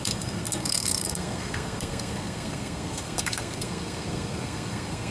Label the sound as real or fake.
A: fake